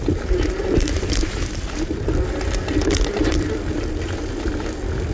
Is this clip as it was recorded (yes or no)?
yes